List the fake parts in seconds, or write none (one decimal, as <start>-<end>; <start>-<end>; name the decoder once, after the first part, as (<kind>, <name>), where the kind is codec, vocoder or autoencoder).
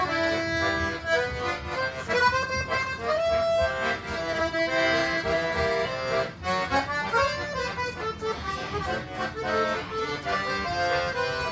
none